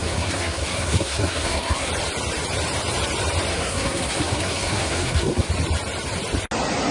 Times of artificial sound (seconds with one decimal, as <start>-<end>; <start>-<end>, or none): 0.0-1.9; 3.5-5.5